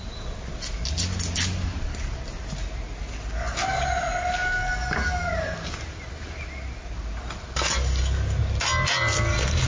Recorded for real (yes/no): yes